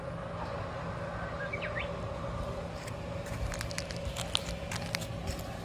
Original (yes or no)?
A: yes